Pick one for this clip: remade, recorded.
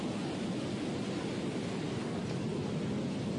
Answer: recorded